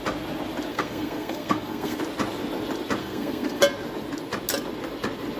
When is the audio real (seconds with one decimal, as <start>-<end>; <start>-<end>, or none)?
0.0-0.7; 2.0-3.0; 3.6-5.4